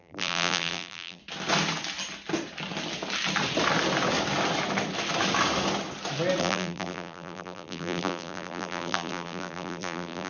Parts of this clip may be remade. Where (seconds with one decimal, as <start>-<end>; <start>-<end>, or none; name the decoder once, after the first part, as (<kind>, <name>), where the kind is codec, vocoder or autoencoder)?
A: 0.0-1.2 (vocoder, BigVGAN v2); 6.4-10.3